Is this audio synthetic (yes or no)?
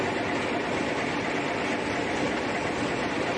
no